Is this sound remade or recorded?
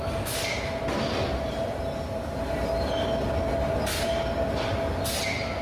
recorded